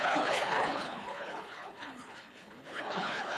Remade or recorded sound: remade